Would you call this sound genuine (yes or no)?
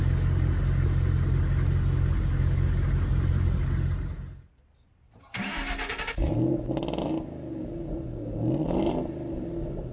yes